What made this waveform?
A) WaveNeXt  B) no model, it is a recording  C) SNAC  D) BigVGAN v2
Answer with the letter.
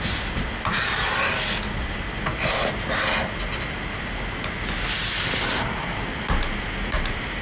B